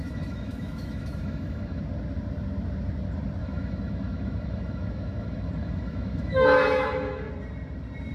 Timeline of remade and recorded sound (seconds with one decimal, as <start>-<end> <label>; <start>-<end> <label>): 0.0-1.8 remade; 1.8-3.4 recorded; 3.4-7.3 remade; 7.3-8.1 recorded